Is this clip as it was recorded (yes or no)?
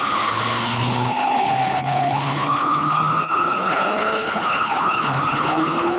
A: no